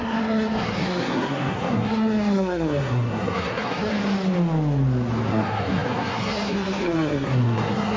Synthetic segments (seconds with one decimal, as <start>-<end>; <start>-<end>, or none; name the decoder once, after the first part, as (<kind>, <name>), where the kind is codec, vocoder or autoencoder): 0.0-3.9 (codec, SNAC); 5.3-8.0